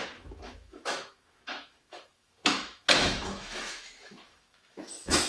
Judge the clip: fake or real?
fake